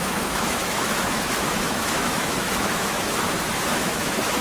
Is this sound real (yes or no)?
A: no